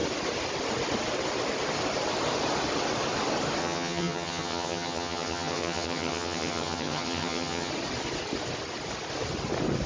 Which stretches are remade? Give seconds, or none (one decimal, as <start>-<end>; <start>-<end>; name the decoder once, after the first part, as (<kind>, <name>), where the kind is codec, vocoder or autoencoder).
3.6-7.7 (vocoder, HiFi-GAN)